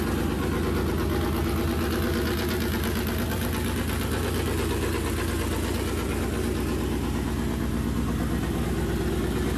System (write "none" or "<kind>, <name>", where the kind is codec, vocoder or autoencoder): none